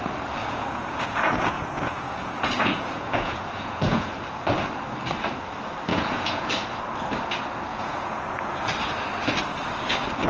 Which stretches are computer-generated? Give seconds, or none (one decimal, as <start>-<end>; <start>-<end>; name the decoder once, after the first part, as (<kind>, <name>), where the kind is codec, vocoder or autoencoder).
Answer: 0.4-4.2 (vocoder, Vocos); 5.9-6.5; 7.7-8.6